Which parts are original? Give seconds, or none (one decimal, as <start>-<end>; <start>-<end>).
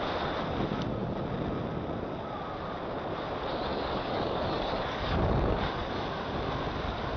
0.0-3.7; 5.9-7.2